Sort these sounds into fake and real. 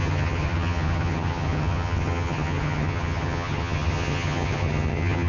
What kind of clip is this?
fake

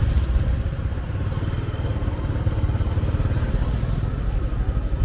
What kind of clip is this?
real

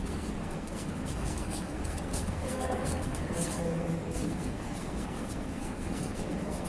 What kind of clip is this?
fake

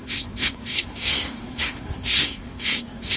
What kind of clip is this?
fake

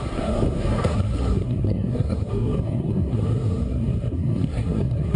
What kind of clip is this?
fake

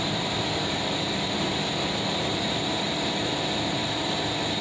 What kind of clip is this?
fake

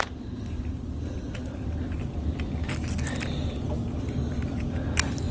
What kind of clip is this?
real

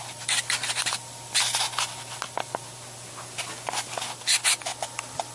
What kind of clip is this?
real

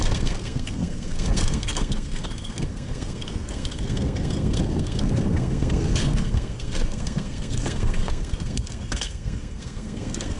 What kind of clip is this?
fake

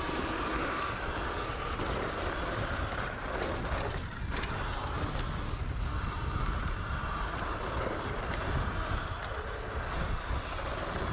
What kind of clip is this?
real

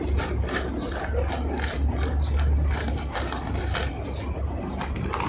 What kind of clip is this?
real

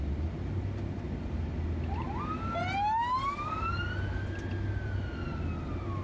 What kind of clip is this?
real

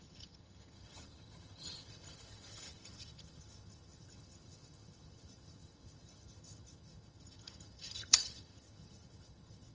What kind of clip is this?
fake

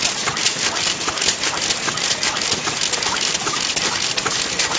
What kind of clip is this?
real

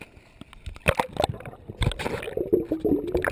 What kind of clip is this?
real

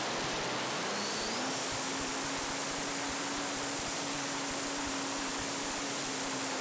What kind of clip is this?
fake